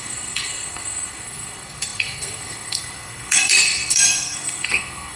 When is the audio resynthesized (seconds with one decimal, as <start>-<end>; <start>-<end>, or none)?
0.0-5.2